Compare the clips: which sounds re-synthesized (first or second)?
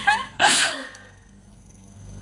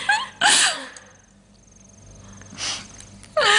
first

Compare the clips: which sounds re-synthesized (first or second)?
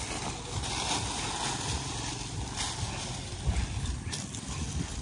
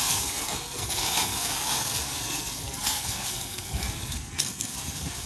second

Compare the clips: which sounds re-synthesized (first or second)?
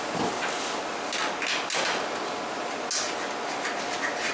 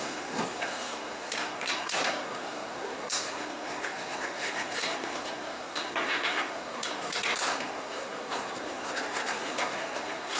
second